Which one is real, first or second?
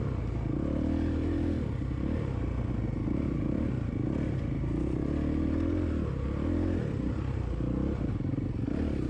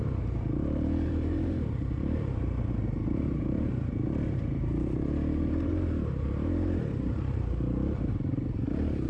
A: first